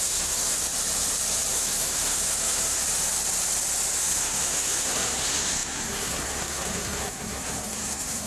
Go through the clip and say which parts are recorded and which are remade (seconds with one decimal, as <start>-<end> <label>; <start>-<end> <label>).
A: 0.0-0.6 remade; 0.6-1.5 recorded; 1.5-2.8 remade; 2.8-4.0 recorded; 4.0-8.3 remade

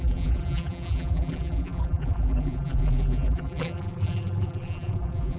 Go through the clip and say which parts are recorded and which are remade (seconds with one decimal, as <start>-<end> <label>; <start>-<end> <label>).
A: 0.0-5.4 remade

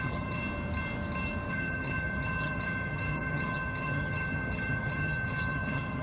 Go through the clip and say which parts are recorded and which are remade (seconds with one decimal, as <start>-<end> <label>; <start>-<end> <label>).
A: 0.0-0.4 remade; 0.4-1.5 recorded; 1.5-6.0 remade

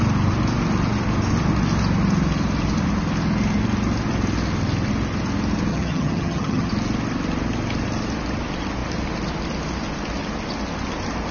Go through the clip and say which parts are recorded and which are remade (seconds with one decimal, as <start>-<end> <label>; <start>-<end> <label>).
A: 0.0-5.7 recorded; 5.7-6.7 remade; 6.7-11.3 recorded

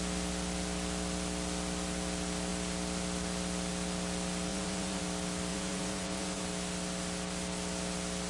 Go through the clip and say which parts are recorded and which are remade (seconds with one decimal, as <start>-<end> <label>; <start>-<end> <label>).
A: 0.0-4.5 recorded; 4.5-5.0 remade; 5.0-5.5 recorded; 5.5-6.4 remade; 6.4-8.3 recorded

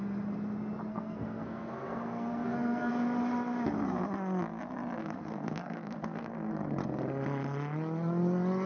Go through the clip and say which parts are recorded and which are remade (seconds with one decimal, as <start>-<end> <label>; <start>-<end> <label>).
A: 0.0-0.9 recorded; 0.9-2.9 remade; 2.9-5.0 recorded; 5.0-6.5 remade; 6.5-8.7 recorded

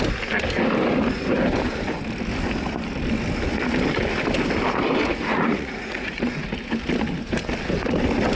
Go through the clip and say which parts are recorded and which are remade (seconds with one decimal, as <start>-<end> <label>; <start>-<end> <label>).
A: 0.0-5.3 recorded; 5.3-6.2 remade; 6.2-8.3 recorded